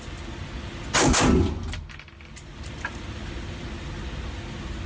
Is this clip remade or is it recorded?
recorded